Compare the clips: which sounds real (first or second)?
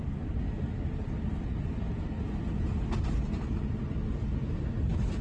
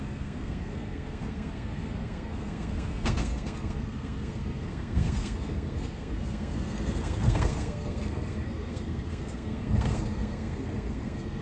first